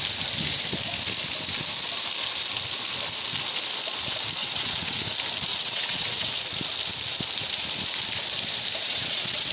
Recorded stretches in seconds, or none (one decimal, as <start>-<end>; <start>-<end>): 0.0-4.4; 5.0-5.5; 6.3-8.8